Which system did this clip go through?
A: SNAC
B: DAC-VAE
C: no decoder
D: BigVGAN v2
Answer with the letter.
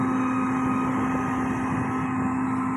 C